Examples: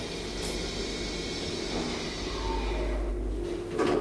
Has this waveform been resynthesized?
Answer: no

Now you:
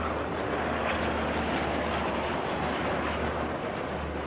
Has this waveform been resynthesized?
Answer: no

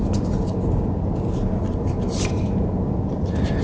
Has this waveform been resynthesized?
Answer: no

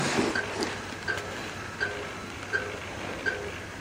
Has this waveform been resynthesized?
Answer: no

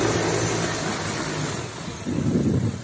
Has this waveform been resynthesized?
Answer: no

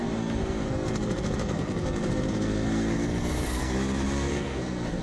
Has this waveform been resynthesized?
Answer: yes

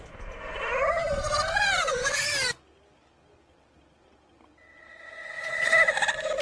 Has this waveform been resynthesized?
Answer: no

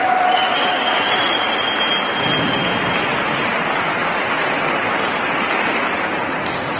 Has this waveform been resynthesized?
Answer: no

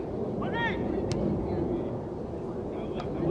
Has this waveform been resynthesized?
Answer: no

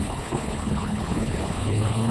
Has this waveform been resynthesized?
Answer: yes